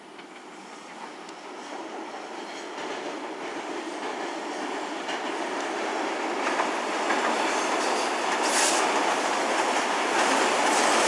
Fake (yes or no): no